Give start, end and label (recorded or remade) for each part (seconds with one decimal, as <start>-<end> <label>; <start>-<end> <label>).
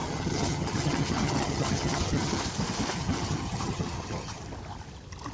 0.0-2.4 remade; 2.4-3.0 recorded; 3.0-4.4 remade; 4.4-5.3 recorded